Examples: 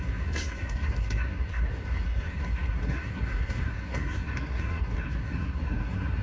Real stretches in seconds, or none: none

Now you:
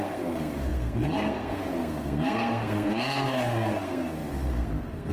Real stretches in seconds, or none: none

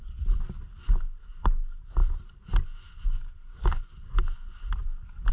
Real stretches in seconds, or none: 0.0-5.3

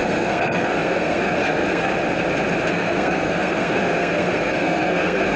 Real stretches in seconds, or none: 1.9-2.7

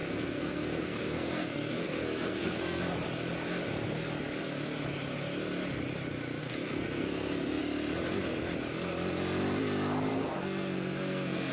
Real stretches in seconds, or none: 2.8-6.4; 7.6-10.1

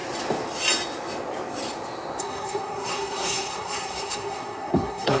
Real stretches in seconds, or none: 0.0-2.2

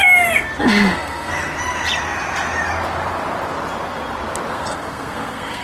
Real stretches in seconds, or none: 0.0-0.6; 1.5-4.5